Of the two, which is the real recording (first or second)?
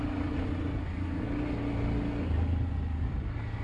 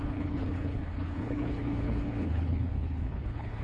first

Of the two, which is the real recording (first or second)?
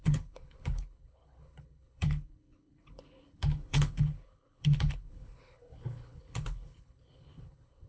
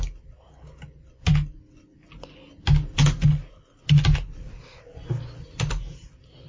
second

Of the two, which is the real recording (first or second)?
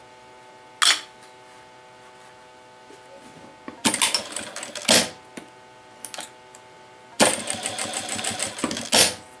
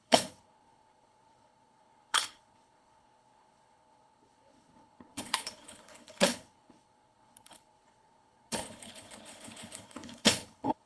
first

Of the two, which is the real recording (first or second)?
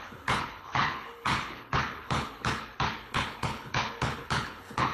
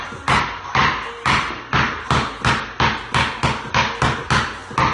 second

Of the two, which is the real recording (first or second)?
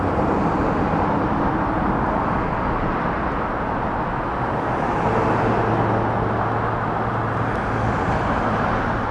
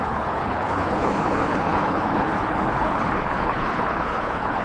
first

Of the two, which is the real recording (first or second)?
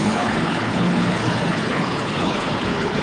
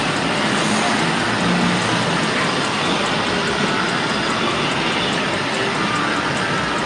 second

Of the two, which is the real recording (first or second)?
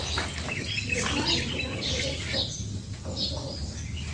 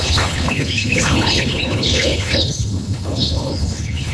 first